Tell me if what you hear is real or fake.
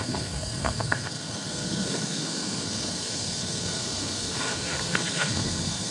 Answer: fake